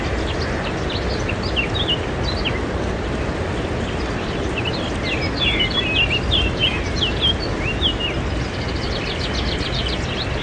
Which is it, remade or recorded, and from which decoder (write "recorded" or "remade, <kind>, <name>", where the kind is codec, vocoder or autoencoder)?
recorded